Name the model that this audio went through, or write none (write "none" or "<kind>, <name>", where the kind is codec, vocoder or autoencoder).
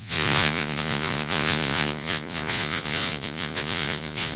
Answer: vocoder, Vocos